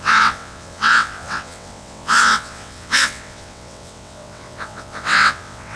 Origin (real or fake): fake